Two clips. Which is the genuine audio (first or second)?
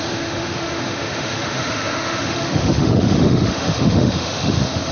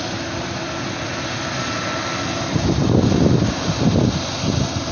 second